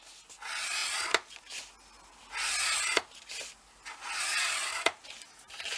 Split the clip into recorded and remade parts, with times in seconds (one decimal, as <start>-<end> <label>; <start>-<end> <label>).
0.0-5.8 recorded